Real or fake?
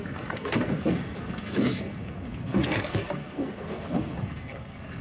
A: fake